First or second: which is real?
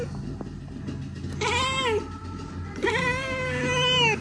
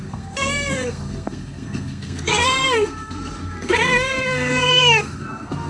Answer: first